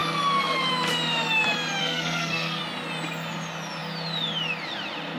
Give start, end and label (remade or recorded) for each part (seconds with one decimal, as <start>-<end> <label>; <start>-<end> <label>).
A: 0.0-1.8 recorded; 1.8-2.6 remade; 2.6-5.2 recorded